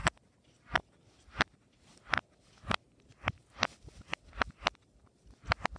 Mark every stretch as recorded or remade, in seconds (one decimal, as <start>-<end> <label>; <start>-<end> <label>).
0.0-5.8 recorded